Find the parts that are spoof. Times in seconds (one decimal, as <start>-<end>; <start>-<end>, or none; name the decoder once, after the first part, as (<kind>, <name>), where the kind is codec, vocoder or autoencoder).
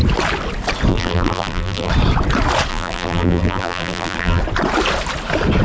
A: 0.9-1.9 (vocoder, BigVGAN v2); 2.7-4.4